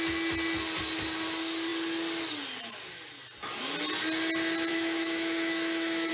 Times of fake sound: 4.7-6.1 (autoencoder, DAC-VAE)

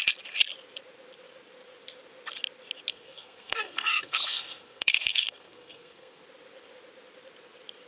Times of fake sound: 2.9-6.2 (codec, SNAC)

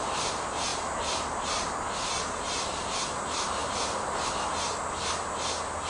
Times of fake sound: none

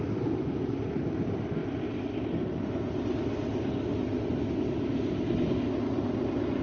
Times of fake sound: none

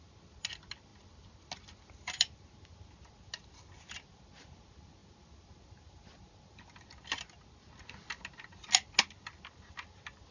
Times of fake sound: none

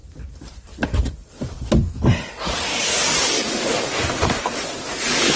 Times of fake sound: none